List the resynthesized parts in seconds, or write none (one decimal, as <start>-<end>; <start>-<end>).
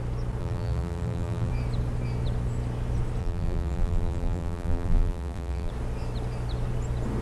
0.4-1.5; 3.2-5.7